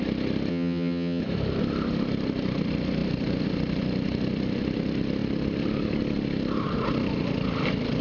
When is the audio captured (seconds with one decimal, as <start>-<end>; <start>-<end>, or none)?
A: 0.0-0.5; 1.2-8.0